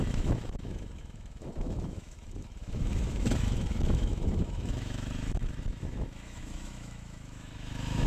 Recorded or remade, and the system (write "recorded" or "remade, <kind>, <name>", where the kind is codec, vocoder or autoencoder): remade, autoencoder, DAC-VAE